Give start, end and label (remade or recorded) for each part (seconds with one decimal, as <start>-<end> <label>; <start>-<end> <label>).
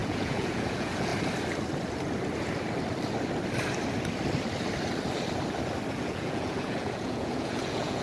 0.0-1.1 remade; 1.1-5.9 recorded; 5.9-8.0 remade